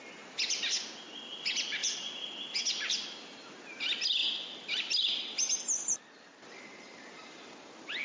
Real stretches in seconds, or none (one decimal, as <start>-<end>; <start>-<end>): 0.0-8.0